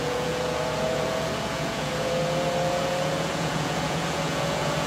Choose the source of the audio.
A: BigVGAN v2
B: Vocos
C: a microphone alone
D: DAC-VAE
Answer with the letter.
B